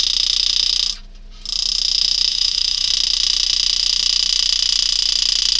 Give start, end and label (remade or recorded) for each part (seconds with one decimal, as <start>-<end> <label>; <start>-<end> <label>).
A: 0.0-2.3 recorded; 2.3-2.9 remade; 2.9-5.6 recorded